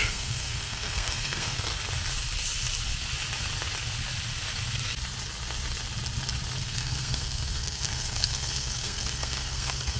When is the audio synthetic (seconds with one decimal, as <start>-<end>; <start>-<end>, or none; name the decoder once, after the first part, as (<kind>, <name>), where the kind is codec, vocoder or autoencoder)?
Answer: 0.0-1.7 (codec, SNAC); 6.6-10.0